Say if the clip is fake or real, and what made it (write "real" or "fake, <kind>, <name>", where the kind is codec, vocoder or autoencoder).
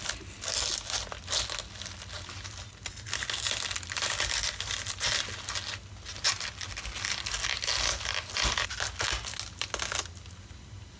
real